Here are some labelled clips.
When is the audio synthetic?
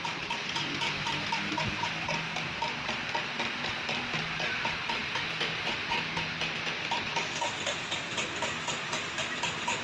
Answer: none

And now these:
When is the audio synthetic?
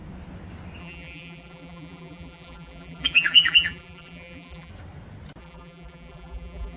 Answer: 0.8-4.7 (vocoder, BigVGAN v2); 5.4-6.8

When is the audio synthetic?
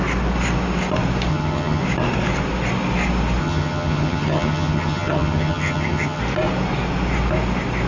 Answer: 1.3-1.8 (vocoder, HiFi-GAN); 3.4-6.2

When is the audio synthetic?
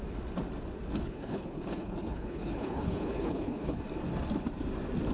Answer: 1.0-3.8 (codec, HILCodec)